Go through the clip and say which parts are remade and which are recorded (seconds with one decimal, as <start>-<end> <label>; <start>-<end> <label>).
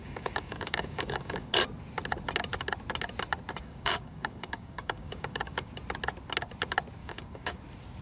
0.0-1.5 remade; 1.5-3.6 recorded; 3.6-5.7 remade; 5.7-7.0 recorded; 7.0-7.6 remade; 7.6-8.0 recorded